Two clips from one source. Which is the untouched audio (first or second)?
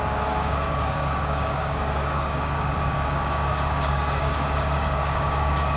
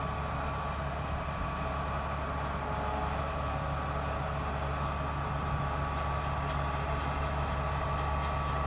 second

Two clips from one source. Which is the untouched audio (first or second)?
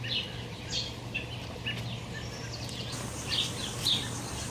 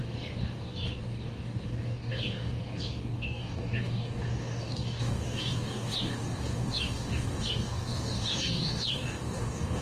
first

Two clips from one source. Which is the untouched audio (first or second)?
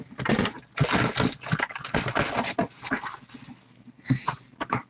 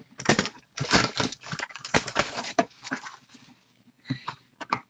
first